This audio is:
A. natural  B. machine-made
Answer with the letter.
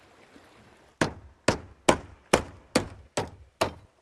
A